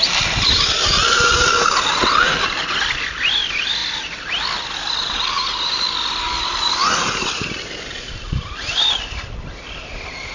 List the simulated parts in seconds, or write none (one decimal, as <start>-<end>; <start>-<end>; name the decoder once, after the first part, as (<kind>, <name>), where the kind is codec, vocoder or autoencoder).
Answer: none